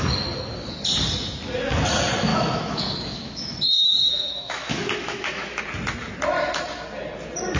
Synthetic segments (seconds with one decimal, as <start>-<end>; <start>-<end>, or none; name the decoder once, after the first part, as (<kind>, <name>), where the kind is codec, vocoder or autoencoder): 2.3-5.6 (autoencoder, DAC-VAE)